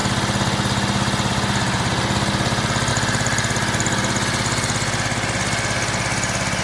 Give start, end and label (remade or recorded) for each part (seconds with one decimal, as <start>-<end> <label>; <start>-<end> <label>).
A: 0.0-6.6 recorded